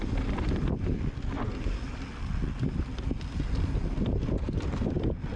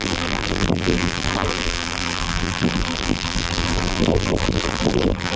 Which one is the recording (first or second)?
first